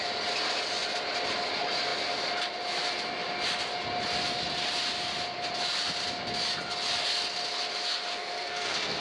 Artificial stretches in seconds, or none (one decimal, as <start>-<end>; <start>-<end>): 8.1-9.0